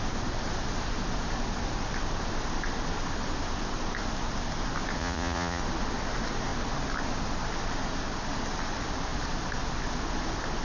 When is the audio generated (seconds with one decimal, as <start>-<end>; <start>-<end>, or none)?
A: 5.0-5.6